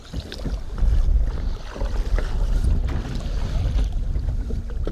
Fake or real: real